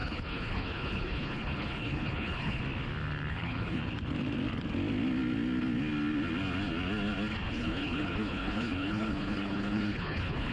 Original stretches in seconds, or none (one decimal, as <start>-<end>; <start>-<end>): 2.6-3.3; 3.8-7.5